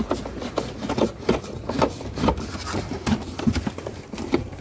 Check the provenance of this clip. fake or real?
real